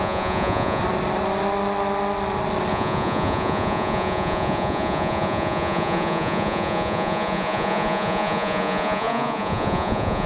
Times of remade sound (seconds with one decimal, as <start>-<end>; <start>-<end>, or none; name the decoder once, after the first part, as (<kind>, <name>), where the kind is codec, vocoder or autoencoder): 0.0-0.8 (vocoder, Vocos); 2.7-10.3